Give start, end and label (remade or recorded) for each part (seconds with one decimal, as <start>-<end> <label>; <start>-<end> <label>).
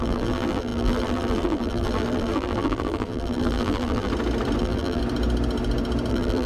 0.0-4.1 remade; 4.1-4.6 recorded; 4.6-5.0 remade; 5.0-6.1 recorded; 6.1-6.5 remade